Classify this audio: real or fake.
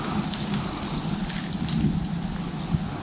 real